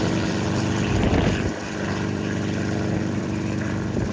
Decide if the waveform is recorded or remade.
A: remade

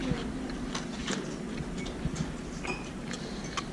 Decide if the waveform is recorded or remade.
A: recorded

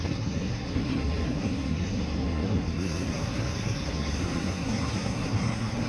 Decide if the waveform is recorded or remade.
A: remade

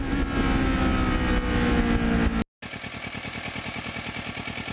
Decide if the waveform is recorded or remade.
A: recorded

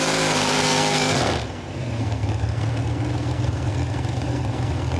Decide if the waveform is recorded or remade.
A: remade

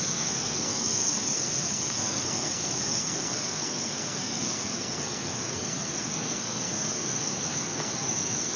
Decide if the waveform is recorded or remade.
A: remade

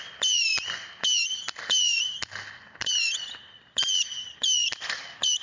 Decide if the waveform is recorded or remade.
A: recorded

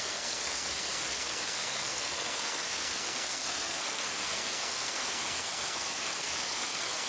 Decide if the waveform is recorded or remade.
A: remade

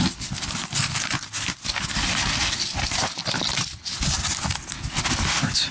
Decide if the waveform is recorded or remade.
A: recorded